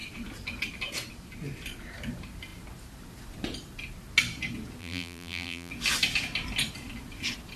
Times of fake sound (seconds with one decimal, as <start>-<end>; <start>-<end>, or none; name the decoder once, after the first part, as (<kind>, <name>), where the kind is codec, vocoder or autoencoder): 4.8-5.7 (vocoder, BigVGAN v2)